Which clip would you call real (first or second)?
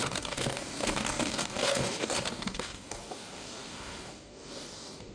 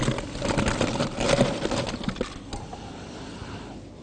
second